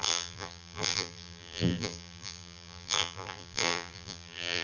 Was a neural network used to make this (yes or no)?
yes